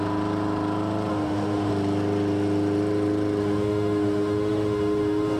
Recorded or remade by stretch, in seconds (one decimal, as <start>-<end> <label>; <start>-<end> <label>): 0.0-1.1 recorded; 1.1-1.7 remade; 1.7-3.4 recorded; 3.4-5.4 remade